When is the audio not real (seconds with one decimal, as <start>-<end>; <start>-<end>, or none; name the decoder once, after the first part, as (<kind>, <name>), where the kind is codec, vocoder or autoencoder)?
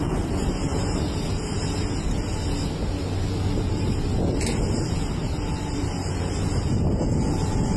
none